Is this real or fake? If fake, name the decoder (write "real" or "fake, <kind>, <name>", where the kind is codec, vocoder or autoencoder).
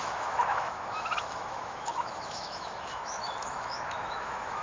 fake, autoencoder, DAC-VAE